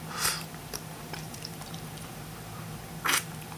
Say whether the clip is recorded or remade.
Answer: remade